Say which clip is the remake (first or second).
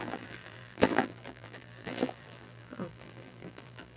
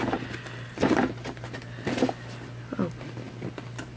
first